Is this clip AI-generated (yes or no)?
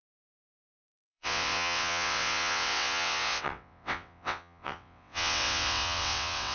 yes